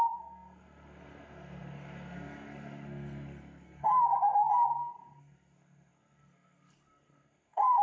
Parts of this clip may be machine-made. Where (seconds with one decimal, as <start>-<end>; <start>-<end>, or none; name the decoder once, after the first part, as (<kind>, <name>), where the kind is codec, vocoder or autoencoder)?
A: 0.0-7.8 (codec, SNAC)